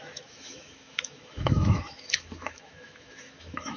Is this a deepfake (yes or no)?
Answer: yes